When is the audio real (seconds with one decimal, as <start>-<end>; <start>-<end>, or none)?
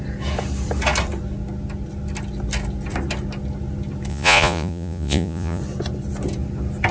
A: 0.0-4.1; 5.6-6.9